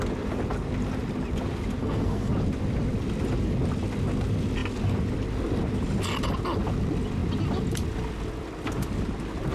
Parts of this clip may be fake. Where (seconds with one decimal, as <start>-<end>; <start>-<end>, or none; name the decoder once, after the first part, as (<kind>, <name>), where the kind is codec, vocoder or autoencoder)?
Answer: 1.8-2.3 (codec, SNAC)